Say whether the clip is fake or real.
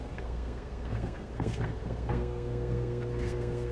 fake